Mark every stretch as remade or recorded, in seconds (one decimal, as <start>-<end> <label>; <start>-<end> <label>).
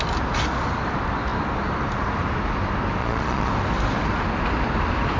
0.0-3.0 recorded; 3.0-3.5 remade; 3.5-5.2 recorded